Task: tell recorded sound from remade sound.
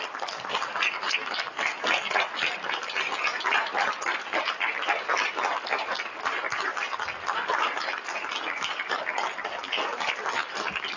recorded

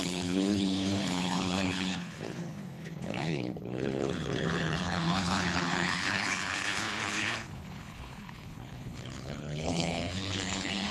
remade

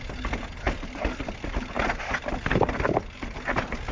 recorded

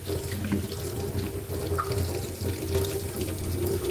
recorded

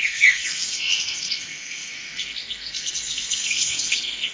remade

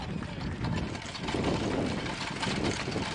recorded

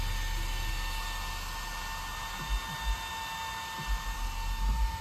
recorded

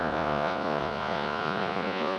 remade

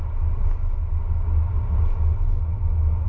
recorded